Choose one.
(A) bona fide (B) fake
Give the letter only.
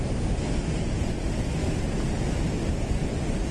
A